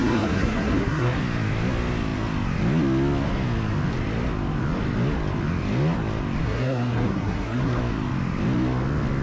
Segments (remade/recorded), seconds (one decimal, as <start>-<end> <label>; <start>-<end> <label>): 0.0-1.2 remade; 1.2-6.4 recorded; 6.4-7.8 remade; 7.8-9.2 recorded